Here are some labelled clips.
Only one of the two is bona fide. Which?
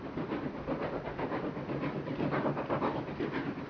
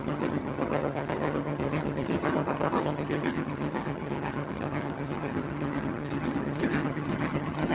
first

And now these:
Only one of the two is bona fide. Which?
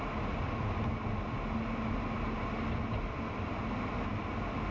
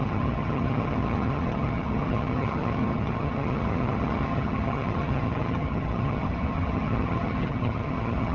first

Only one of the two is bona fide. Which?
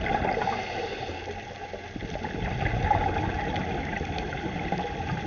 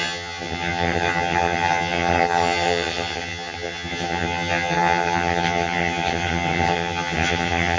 first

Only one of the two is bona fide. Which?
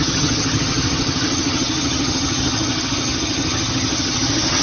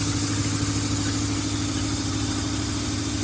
second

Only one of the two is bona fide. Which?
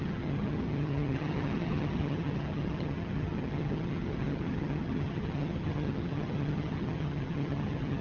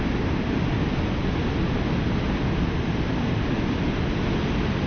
second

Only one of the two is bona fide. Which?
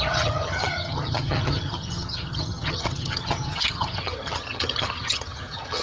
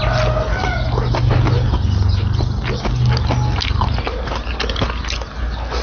second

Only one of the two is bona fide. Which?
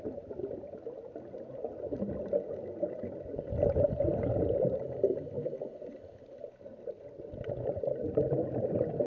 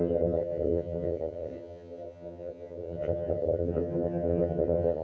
first